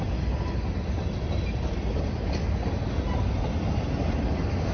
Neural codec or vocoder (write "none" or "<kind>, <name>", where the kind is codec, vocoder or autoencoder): none